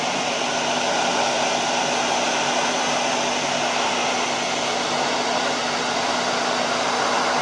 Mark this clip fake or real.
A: real